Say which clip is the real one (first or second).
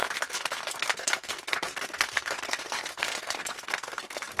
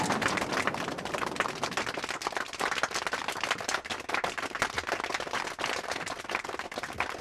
second